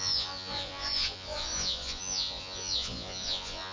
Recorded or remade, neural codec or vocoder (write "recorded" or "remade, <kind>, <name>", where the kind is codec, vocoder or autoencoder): remade, vocoder, Vocos